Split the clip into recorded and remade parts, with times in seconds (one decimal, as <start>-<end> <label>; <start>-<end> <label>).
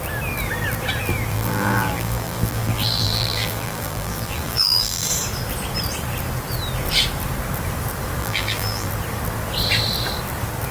0.0-1.3 recorded; 1.3-5.1 remade; 5.1-8.2 recorded; 8.2-8.9 remade; 8.9-10.7 recorded